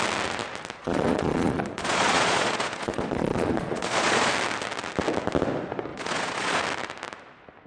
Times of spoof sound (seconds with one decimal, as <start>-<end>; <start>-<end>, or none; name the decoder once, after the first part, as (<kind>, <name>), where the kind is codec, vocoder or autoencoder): 0.8-4.3 (vocoder, Vocos); 5.9-6.6